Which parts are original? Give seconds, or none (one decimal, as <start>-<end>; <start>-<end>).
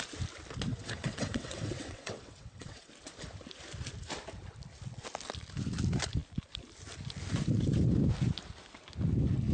0.0-0.7; 2.9-9.5